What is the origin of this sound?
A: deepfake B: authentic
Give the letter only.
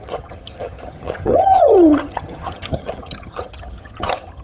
A